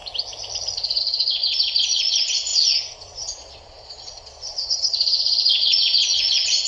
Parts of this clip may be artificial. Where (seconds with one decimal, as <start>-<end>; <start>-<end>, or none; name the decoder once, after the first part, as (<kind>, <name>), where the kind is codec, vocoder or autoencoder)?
1.0-6.7 (vocoder, Vocos)